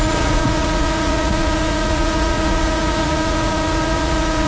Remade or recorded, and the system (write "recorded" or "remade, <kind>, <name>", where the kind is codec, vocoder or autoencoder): remade, vocoder, Vocos